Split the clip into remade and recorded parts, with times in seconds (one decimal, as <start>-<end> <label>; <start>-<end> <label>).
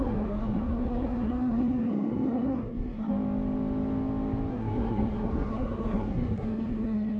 0.0-3.1 remade; 3.1-4.5 recorded; 4.5-7.2 remade